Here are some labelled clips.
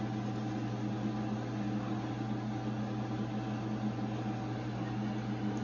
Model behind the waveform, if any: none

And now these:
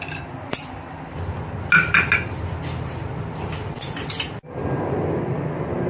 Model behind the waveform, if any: none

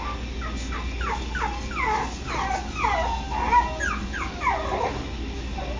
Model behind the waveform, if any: none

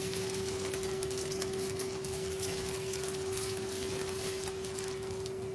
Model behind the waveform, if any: codec, SNAC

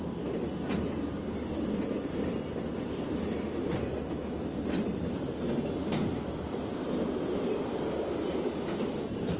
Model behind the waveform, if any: none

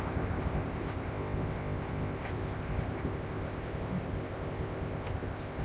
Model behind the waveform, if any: codec, ZipCodec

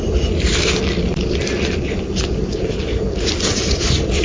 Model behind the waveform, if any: none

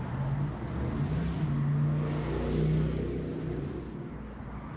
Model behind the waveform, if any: none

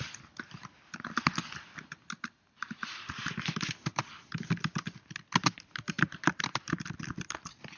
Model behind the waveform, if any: none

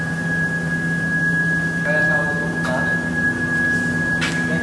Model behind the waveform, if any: none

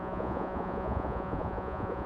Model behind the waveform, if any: vocoder, Vocos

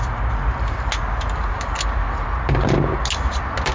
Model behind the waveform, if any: none